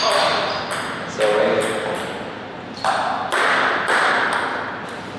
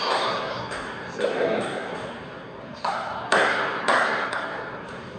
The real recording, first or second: first